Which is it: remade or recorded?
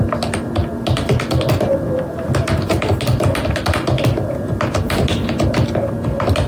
recorded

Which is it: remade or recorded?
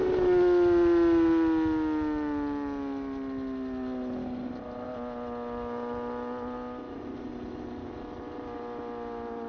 recorded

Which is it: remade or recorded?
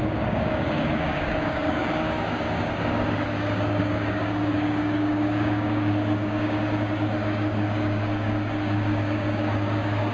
remade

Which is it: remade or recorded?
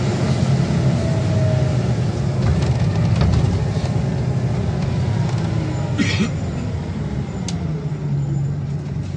recorded